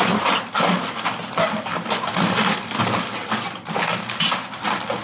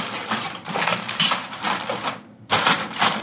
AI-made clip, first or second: second